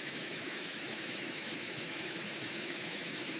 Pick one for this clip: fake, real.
fake